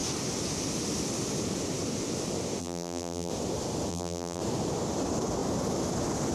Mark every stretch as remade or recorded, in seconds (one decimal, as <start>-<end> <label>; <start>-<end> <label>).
0.0-2.6 recorded; 2.6-3.3 remade; 3.3-3.9 recorded; 3.9-4.4 remade; 4.4-6.3 recorded